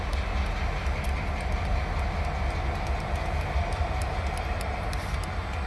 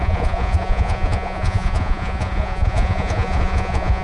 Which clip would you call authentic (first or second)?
first